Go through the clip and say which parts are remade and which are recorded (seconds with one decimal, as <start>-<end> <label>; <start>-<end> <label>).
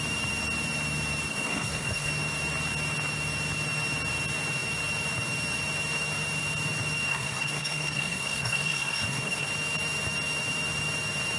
0.0-1.3 recorded; 1.3-2.1 remade; 2.1-7.1 recorded; 7.1-9.5 remade; 9.5-11.4 recorded